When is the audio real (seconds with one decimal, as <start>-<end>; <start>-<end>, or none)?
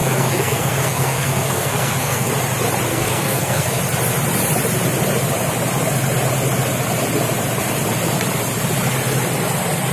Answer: 2.3-2.9; 3.8-9.9